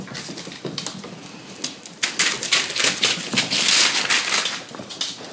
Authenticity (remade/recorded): recorded